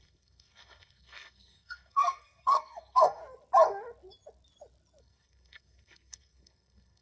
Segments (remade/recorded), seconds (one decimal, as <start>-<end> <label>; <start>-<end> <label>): 0.0-3.2 remade; 3.2-5.0 recorded; 5.0-7.0 remade